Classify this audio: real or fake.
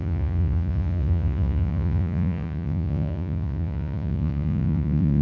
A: fake